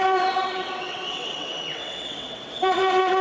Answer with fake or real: fake